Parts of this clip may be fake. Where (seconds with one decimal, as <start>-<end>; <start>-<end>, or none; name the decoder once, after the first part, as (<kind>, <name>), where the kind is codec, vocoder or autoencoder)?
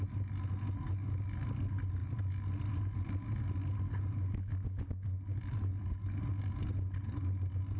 none